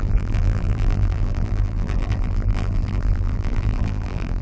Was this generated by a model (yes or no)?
yes